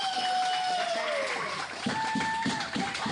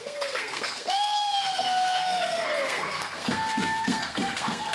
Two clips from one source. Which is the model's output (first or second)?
second